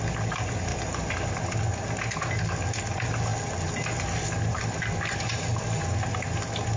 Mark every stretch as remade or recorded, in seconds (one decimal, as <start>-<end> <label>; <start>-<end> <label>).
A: 0.0-6.8 recorded